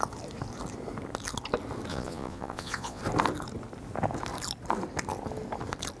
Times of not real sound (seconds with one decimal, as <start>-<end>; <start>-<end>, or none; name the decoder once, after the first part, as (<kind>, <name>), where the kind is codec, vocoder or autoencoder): 1.9-3.0 (vocoder, Vocos)

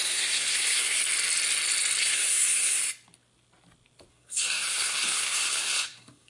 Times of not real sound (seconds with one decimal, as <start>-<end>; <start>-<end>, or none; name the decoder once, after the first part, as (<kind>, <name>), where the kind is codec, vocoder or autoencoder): 0.0-1.0 (codec, SNAC); 2.0-2.8; 4.1-6.3

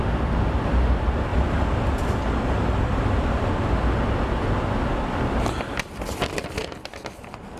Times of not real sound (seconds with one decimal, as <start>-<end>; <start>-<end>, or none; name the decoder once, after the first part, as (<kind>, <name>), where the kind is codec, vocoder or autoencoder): none